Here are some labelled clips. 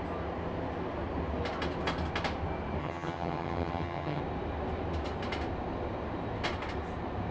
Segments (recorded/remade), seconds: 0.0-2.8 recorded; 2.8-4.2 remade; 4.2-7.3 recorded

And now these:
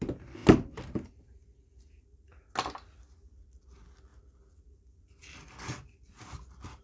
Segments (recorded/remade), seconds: 0.0-6.8 recorded

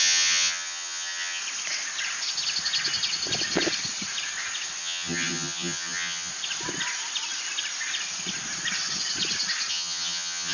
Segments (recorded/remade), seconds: 0.0-1.4 remade; 1.4-4.8 recorded; 4.8-6.3 remade; 6.3-9.7 recorded; 9.7-10.5 remade

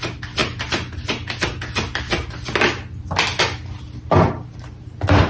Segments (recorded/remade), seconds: 0.0-5.3 recorded

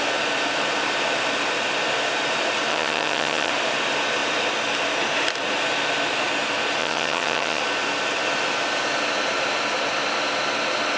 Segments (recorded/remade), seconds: 0.0-2.7 recorded; 2.7-3.5 remade; 3.5-6.8 recorded; 6.8-7.6 remade; 7.6-11.0 recorded